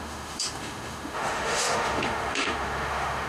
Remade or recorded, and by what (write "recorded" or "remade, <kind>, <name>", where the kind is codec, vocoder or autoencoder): remade, autoencoder, DAC-VAE